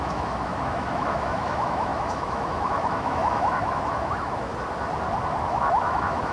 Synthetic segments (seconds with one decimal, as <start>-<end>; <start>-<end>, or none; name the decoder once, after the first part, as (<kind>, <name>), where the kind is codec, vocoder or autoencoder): 0.0-4.5 (autoencoder, DAC-VAE); 5.4-6.3